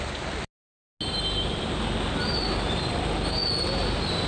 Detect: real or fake real